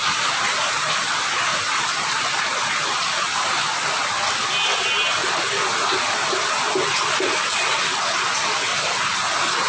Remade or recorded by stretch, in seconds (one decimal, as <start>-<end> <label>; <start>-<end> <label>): 0.0-1.1 remade; 1.1-1.5 recorded; 1.5-3.9 remade; 3.9-9.7 recorded